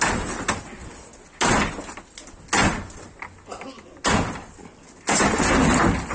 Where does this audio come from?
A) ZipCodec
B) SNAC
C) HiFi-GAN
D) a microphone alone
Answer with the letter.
D